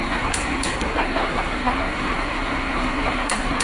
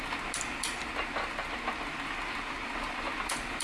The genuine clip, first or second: second